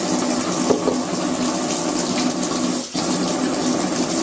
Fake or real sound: real